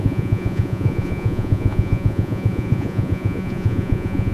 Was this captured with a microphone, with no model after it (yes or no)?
no